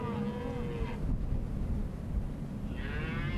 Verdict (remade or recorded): recorded